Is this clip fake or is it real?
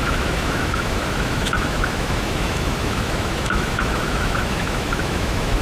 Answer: fake